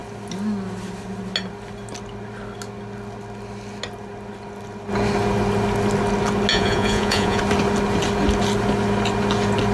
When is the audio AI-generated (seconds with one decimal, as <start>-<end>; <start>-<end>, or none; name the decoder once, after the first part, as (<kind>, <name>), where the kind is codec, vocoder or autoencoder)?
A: 6.5-7.4 (vocoder, Vocos)